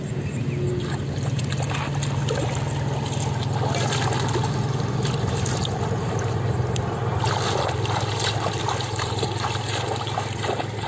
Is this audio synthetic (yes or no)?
no